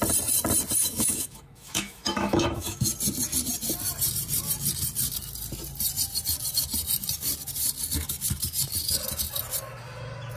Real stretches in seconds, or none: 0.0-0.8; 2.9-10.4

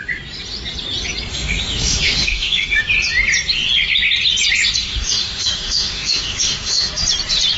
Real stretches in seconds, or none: 0.0-1.3; 2.8-4.8; 6.9-7.6

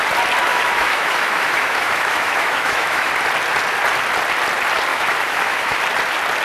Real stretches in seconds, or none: 0.0-0.5; 3.1-4.9; 5.8-6.4

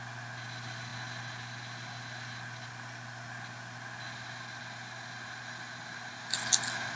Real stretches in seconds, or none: 0.0-7.0

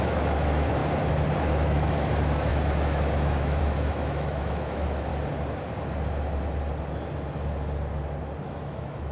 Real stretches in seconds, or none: 0.8-1.4; 5.1-8.5